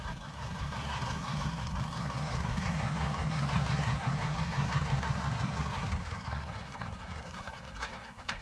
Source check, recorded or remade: remade